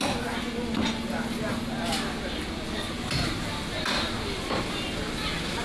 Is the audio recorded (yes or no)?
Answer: yes